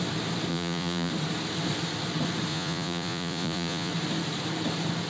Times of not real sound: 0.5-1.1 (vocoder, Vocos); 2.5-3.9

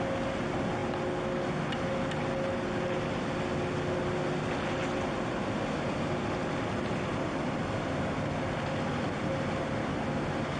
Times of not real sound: none

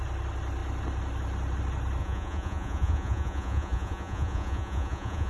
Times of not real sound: 2.0-5.3 (vocoder, Vocos)

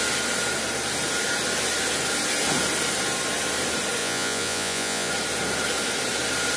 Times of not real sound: 4.0-5.1 (vocoder, Vocos)